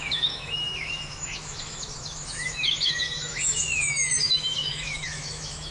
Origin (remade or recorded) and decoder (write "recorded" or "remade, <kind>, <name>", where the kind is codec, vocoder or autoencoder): remade, autoencoder, DAC-VAE